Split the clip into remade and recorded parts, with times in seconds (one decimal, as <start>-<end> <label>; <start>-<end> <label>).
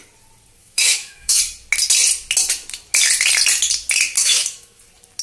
0.0-0.6 recorded; 0.6-1.4 remade; 1.4-4.2 recorded; 4.2-4.8 remade; 4.8-5.2 recorded